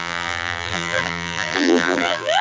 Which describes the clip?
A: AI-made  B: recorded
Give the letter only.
A